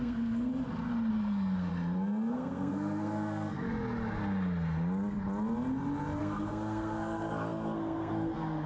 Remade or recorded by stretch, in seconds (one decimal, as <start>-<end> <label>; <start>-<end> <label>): 0.0-0.5 remade; 0.5-1.1 recorded; 1.1-1.7 remade; 1.7-2.3 recorded; 2.3-3.7 remade; 3.7-6.2 recorded; 6.2-8.7 remade